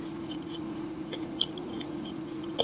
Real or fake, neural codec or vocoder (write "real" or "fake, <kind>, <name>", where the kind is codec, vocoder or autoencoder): fake, vocoder, Vocos